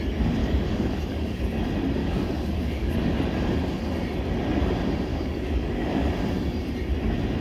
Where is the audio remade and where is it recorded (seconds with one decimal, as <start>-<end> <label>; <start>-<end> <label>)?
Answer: 0.0-0.4 recorded; 0.4-1.4 remade; 1.4-2.0 recorded; 2.0-3.0 remade; 3.0-5.1 recorded; 5.1-6.1 remade; 6.1-7.4 recorded